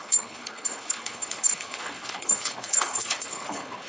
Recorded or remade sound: remade